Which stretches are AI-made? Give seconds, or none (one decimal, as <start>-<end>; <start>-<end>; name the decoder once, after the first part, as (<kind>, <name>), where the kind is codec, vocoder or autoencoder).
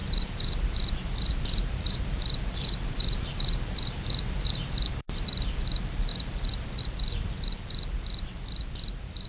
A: 0.0-3.8 (vocoder, BigVGAN v2); 6.1-6.8